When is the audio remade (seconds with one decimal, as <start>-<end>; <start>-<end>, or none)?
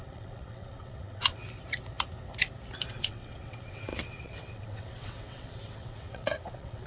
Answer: 0.0-1.4; 2.9-6.9